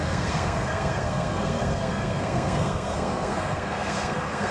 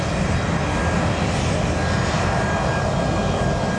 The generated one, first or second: first